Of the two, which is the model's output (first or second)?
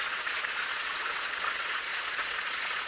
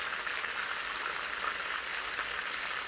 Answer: first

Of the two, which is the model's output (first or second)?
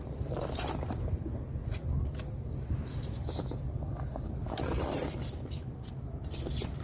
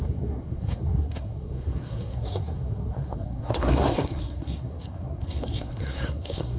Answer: second